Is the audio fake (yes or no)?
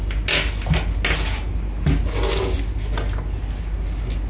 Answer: no